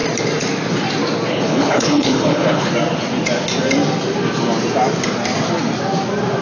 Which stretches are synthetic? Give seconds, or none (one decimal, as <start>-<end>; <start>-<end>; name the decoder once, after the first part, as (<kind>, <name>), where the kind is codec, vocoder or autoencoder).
1.3-2.7 (codec, HILCodec)